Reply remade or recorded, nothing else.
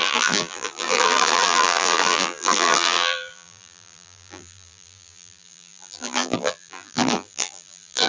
remade